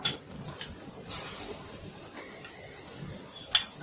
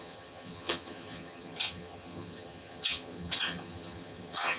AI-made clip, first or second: second